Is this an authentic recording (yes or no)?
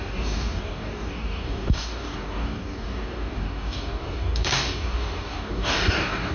no